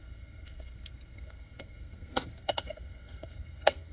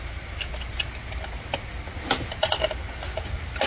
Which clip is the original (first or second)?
second